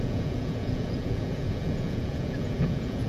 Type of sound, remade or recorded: remade